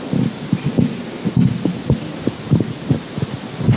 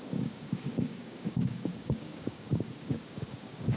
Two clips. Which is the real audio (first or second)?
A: first